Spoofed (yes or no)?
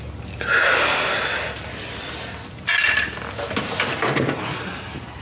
no